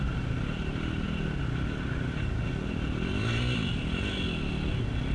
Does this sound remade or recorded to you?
recorded